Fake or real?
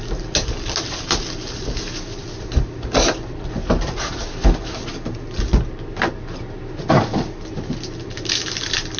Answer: real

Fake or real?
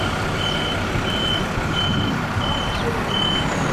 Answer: real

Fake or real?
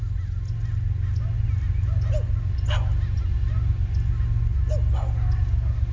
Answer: real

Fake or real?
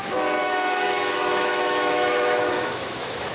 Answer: fake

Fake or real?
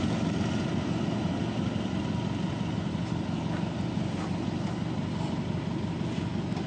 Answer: real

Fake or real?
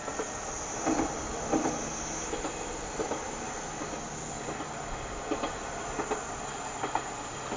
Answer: real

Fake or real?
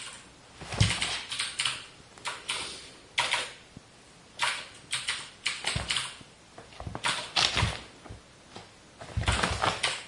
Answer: real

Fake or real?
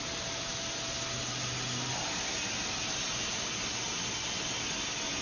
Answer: real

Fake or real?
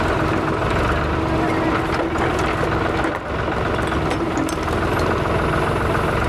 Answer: real